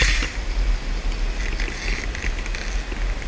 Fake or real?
real